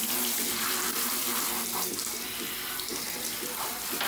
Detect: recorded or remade recorded